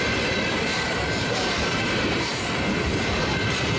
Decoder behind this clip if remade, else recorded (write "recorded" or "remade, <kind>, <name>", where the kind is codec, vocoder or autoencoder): remade, vocoder, BigVGAN v2